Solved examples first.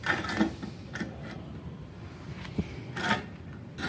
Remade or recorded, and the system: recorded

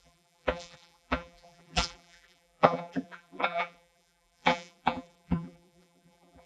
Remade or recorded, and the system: remade, vocoder, BigVGAN v2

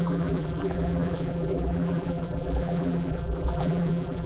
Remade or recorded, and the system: remade, vocoder, BigVGAN v2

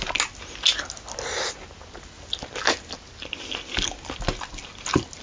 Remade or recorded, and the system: recorded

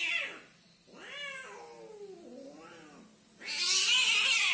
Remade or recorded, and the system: recorded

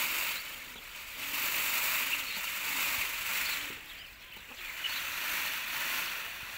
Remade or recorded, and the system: recorded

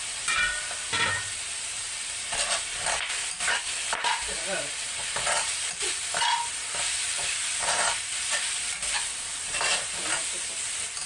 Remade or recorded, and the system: remade, vocoder, BigVGAN v2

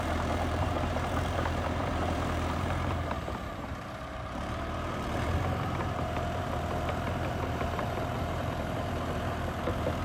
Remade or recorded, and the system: remade, vocoder, BigVGAN v2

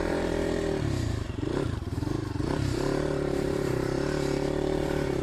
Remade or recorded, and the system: remade, vocoder, BigVGAN v2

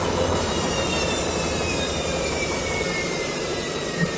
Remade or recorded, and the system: remade, vocoder, BigVGAN v2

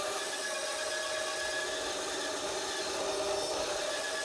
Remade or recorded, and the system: recorded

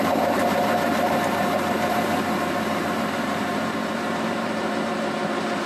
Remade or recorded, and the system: remade, vocoder, BigVGAN v2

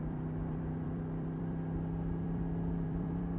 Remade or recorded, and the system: remade, vocoder, BigVGAN v2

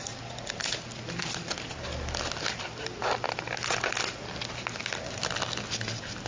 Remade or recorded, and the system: recorded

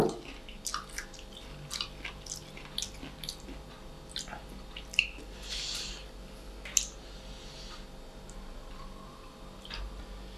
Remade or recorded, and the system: recorded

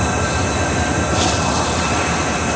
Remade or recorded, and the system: recorded